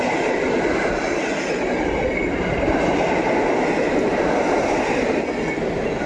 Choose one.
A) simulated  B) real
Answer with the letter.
B